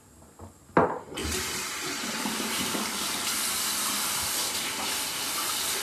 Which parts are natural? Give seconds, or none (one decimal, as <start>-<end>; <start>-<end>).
0.0-5.8